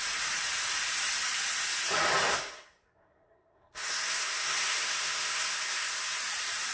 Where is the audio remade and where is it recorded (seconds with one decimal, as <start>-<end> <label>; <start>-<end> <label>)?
0.0-2.3 recorded; 2.3-6.2 remade; 6.2-6.7 recorded